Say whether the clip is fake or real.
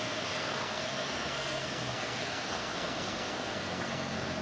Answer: fake